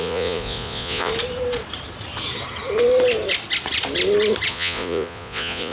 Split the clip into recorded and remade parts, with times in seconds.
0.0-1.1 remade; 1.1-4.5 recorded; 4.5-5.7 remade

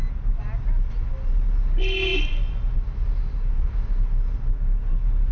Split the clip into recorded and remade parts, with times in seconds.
0.0-5.3 recorded

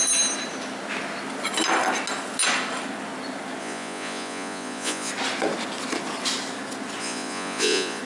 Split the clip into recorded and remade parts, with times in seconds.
0.0-3.6 recorded; 3.6-5.1 remade; 5.1-7.0 recorded; 7.0-8.0 remade

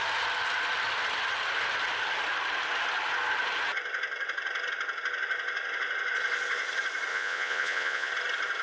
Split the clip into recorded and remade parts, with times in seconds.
0.0-7.1 recorded; 7.1-8.1 remade; 8.1-8.6 recorded